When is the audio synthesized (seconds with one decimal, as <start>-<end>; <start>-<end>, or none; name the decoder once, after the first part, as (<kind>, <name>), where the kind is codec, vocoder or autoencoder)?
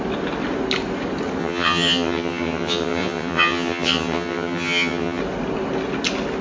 1.4-5.2 (vocoder, HiFi-GAN)